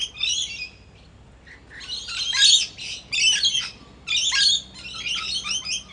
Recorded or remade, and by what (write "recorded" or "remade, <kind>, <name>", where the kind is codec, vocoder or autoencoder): recorded